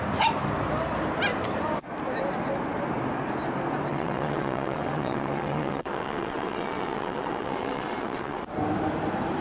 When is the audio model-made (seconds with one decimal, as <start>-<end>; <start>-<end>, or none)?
3.9-8.4

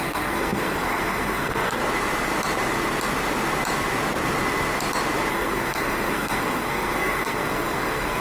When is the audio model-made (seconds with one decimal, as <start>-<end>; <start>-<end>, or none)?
0.0-1.8; 5.3-8.2